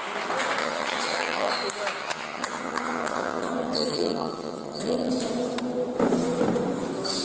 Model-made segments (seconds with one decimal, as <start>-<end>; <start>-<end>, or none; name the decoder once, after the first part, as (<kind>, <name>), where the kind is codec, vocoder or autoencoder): 0.6-1.5 (vocoder, HiFi-GAN); 2.0-5.1

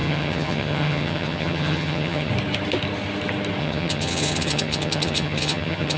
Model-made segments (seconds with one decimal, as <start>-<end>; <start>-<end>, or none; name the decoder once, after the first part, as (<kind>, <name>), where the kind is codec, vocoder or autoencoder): 0.0-2.3 (vocoder, HiFi-GAN); 3.6-6.0

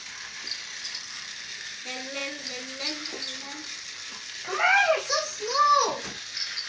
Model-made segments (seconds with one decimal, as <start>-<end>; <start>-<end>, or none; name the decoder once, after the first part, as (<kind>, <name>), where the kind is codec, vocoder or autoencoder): none

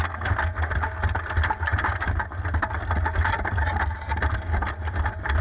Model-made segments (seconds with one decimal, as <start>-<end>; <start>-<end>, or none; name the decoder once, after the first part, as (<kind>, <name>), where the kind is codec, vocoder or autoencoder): none

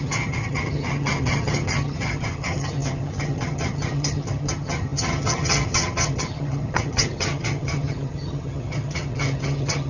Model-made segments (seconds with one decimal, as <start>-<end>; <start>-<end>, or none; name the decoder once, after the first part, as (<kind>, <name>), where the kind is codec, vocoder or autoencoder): 0.0-9.9 (vocoder, HiFi-GAN)

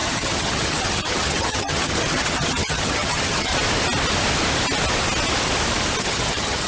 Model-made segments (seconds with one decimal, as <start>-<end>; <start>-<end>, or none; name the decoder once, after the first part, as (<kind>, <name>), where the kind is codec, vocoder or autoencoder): 0.0-3.5 (vocoder, HiFi-GAN); 6.0-6.7

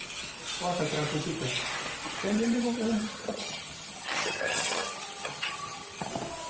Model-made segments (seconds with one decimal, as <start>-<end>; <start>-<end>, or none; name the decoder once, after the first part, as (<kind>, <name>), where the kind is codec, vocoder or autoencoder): 2.2-6.1 (vocoder, HiFi-GAN)